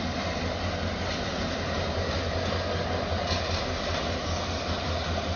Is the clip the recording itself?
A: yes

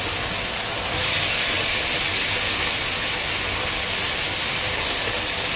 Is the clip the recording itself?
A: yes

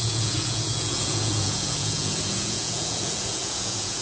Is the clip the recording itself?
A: no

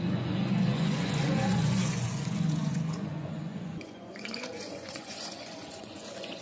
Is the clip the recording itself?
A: no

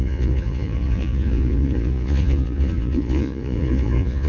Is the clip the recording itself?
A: no